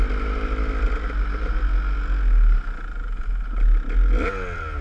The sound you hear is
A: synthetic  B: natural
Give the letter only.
B